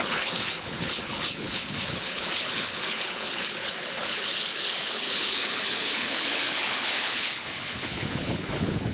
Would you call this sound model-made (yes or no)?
yes